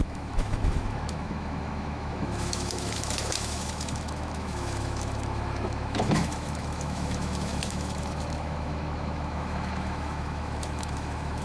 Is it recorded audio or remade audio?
remade